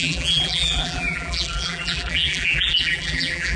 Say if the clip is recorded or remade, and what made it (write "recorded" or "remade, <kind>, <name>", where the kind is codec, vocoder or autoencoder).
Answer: remade, vocoder, BigVGAN v2